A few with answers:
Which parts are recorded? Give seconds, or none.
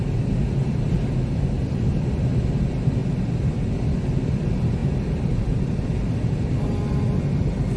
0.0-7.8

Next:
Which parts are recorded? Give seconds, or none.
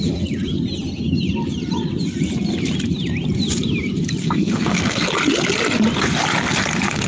0.0-4.2; 5.1-7.1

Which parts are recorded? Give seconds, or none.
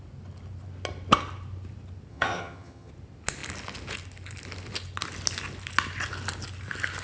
0.0-2.1; 2.9-7.0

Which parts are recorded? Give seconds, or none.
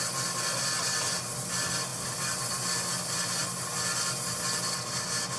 0.0-5.4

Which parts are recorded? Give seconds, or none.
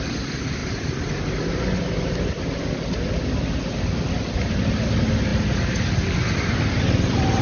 0.0-7.4